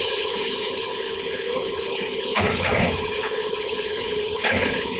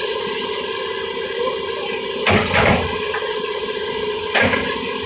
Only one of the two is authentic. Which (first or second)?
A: second